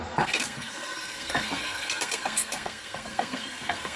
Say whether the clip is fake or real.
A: fake